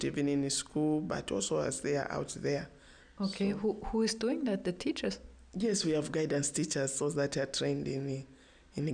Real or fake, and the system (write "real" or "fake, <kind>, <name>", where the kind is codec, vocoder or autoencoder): real